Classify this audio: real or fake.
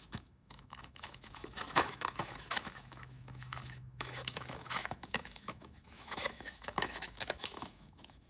fake